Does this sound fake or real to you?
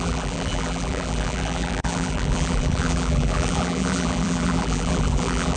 fake